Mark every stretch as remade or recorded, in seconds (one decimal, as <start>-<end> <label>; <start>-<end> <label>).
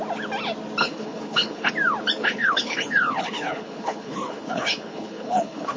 0.0-0.8 recorded; 0.8-1.7 remade; 1.7-2.2 recorded; 2.2-5.8 remade